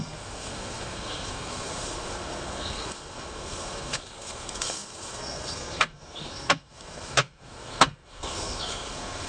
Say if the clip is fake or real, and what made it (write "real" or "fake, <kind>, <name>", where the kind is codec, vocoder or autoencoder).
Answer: fake, codec, SNAC